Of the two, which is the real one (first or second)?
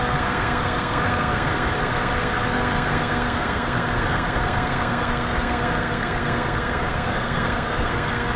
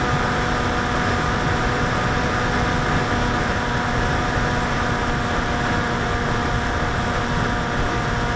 second